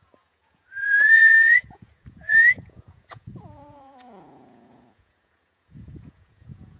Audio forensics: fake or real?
fake